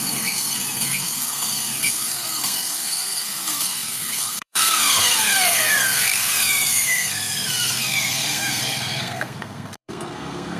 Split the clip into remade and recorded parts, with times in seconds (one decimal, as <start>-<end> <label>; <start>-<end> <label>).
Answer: 0.0-10.6 remade